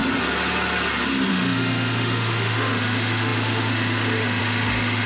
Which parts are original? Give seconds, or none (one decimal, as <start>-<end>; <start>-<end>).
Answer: 0.0-1.3

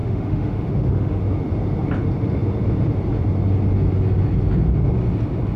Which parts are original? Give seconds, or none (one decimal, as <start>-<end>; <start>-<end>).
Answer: 1.2-5.6

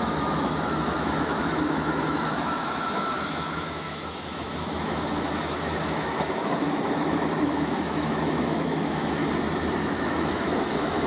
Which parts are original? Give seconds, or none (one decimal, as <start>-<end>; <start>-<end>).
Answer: 9.2-9.8

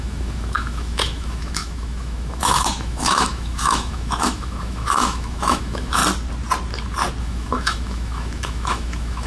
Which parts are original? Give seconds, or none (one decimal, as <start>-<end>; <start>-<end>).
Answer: 6.0-7.2

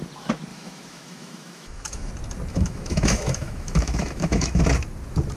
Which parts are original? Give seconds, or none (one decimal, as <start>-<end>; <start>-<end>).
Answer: 0.0-0.5; 2.1-2.5; 4.6-5.4

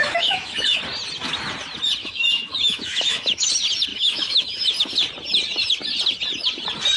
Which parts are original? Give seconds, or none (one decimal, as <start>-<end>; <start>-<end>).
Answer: 0.8-2.0; 3.5-3.9; 4.7-7.0

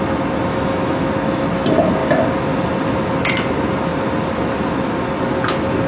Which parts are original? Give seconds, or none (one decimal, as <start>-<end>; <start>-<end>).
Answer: 0.0-0.5; 1.1-5.9